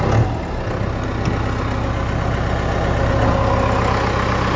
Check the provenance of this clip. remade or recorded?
recorded